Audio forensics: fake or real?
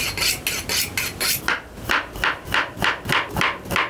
real